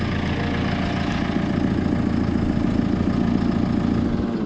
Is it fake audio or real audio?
real